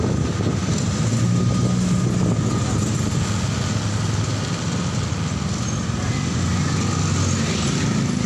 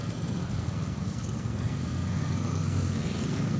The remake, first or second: second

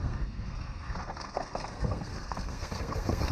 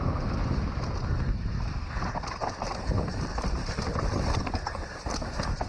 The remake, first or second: first